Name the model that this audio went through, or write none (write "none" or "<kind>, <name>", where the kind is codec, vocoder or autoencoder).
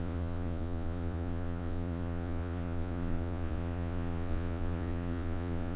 vocoder, Vocos